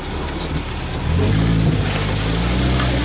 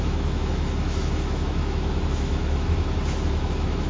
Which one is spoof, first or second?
second